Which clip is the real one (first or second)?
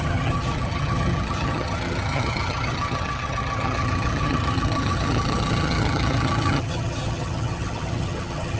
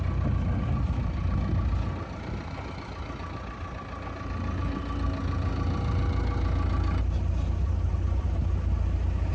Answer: second